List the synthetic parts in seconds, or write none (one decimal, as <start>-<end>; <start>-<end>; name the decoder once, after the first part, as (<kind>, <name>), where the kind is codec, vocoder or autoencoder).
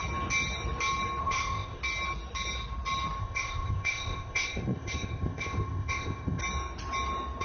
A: 1.2-1.8 (codec, ZipCodec); 3.2-6.4